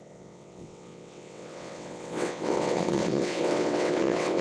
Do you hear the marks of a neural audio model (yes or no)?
yes